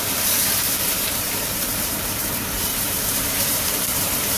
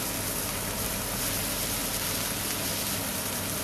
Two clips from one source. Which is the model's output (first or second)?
first